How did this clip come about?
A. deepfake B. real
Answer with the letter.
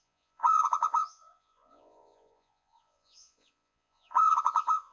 A